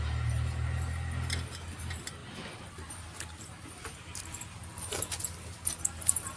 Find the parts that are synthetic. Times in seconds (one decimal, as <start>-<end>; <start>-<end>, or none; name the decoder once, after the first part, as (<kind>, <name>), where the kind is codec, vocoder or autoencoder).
none